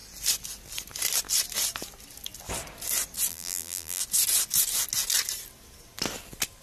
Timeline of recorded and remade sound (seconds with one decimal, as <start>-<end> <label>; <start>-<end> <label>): 0.0-3.3 recorded; 3.3-4.0 remade; 4.0-6.6 recorded